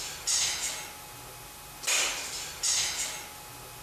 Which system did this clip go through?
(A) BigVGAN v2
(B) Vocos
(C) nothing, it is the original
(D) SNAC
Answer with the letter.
C